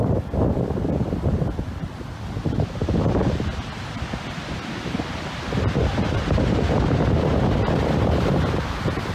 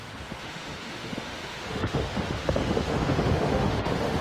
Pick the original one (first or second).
first